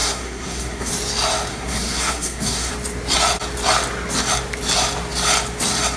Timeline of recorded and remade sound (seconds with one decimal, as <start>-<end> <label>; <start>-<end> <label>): 0.0-0.9 remade; 0.9-1.5 recorded; 1.5-2.7 remade; 2.7-6.0 recorded